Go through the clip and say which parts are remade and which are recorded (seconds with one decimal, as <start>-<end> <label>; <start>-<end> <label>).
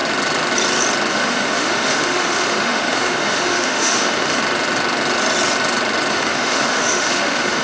0.0-1.1 recorded; 1.1-4.4 remade; 4.4-6.1 recorded; 6.1-7.6 remade